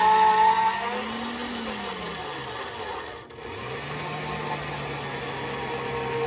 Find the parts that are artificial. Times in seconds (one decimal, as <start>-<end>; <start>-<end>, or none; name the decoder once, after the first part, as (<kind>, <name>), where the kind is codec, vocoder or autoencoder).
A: none

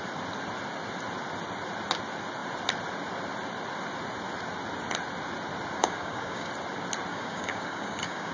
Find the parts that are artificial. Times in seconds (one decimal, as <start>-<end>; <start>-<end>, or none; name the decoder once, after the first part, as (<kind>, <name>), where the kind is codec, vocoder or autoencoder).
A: 5.8-6.5 (codec, DAC); 7.1-8.3

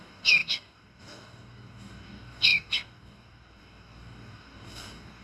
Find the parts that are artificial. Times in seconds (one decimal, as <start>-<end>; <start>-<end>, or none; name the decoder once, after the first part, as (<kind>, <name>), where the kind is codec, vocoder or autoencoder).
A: 0.0-5.2 (codec, DAC)

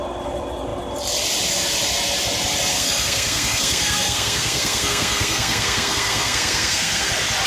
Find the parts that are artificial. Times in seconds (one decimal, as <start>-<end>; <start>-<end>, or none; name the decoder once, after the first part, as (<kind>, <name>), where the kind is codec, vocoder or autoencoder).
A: 2.7-7.1 (codec, SNAC)

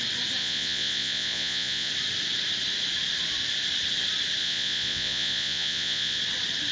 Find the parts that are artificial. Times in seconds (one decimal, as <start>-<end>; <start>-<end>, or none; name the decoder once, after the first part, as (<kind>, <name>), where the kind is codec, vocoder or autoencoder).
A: 0.4-1.9 (vocoder, Vocos); 4.4-6.2

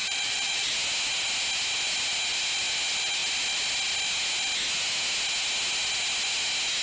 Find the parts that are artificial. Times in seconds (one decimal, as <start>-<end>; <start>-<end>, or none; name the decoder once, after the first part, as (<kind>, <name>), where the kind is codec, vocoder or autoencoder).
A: 0.0-0.7 (vocoder, Vocos)

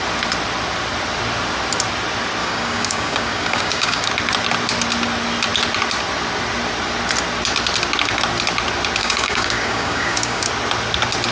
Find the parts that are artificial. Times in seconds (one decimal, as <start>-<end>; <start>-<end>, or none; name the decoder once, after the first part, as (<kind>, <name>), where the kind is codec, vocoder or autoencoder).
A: 2.4-4.1 (codec, DAC); 9.0-10.5